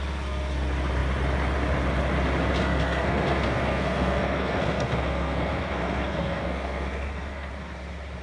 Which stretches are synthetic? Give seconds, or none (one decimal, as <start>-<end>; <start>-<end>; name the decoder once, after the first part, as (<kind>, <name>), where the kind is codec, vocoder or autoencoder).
2.6-7.5 (codec, SNAC)